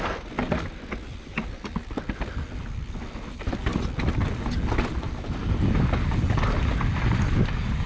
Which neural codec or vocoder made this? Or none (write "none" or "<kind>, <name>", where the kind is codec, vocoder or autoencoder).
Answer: none